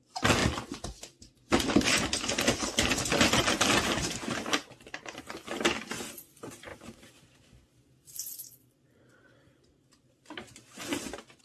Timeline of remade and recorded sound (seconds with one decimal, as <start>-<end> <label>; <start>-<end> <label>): 0.0-6.7 recorded; 6.7-11.4 remade